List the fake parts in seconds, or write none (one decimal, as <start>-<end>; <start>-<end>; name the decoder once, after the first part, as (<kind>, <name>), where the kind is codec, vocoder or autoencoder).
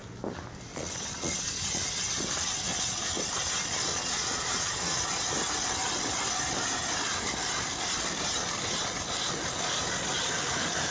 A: 0.7-2.0 (vocoder, Vocos); 3.9-5.0